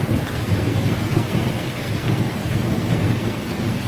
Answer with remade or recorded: remade